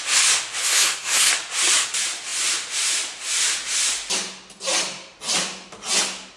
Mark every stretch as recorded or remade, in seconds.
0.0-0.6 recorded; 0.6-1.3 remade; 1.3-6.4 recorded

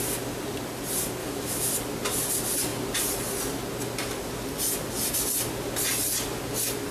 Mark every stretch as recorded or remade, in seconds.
0.0-1.2 recorded; 1.2-1.7 remade; 1.7-6.9 recorded

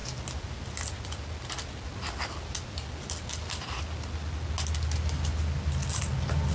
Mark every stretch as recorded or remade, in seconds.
0.0-6.5 recorded

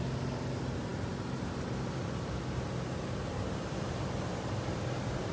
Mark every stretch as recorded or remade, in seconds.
0.0-4.3 recorded; 4.3-5.3 remade

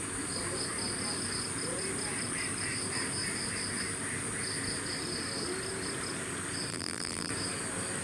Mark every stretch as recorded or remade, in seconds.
0.0-6.7 recorded; 6.7-7.3 remade; 7.3-8.0 recorded

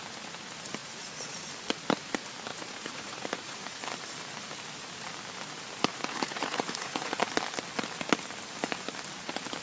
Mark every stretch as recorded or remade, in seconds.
0.0-0.8 recorded; 0.8-1.4 remade; 1.4-2.5 recorded; 2.5-3.8 remade; 3.8-5.9 recorded; 5.9-7.2 remade; 7.2-9.6 recorded